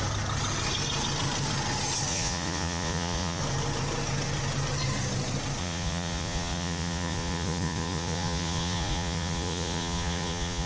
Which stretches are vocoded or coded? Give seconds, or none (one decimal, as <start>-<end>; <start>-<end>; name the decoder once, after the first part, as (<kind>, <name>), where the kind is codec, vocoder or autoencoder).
2.1-3.4 (vocoder, Vocos); 5.6-10.7